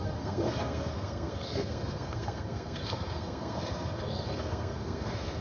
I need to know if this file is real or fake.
fake